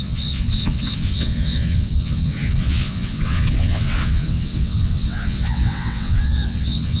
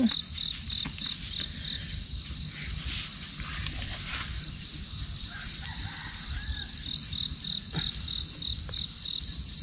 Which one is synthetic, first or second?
first